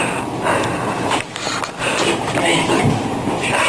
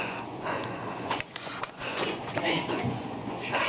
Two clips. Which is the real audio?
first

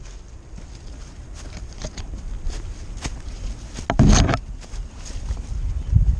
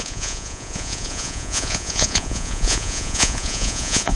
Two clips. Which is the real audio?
first